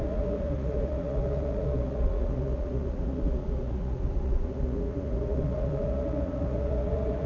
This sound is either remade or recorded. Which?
remade